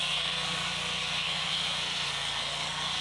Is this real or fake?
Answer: fake